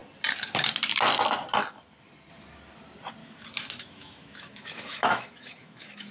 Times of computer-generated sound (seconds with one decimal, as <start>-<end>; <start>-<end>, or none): 3.2-6.1